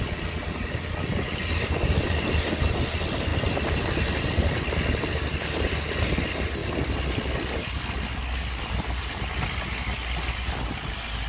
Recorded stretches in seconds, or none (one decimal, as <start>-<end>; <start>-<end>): 0.0-11.3